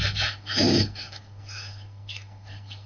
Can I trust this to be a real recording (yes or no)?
no